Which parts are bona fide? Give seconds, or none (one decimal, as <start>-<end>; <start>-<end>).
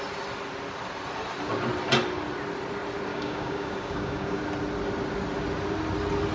0.0-3.1; 4.4-6.3